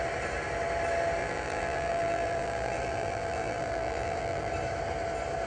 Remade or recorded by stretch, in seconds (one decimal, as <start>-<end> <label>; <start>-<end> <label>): 0.0-1.2 recorded; 1.2-4.5 remade; 4.5-5.5 recorded